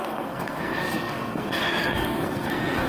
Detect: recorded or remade remade